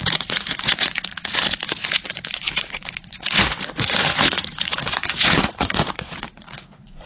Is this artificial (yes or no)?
yes